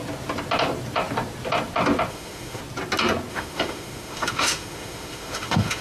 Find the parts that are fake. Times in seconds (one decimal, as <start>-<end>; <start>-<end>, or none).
2.1-2.6; 3.3-5.8